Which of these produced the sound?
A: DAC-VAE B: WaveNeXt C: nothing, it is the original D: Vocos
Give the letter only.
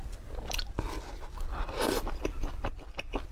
C